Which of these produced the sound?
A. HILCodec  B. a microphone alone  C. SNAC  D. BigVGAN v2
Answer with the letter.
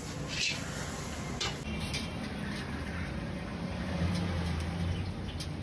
B